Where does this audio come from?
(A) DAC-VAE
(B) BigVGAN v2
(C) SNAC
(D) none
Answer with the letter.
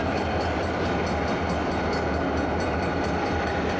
D